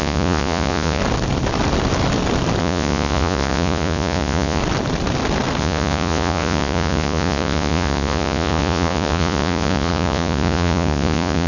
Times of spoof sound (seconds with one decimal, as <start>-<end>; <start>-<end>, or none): 0.0-1.0; 2.6-4.6; 5.6-11.5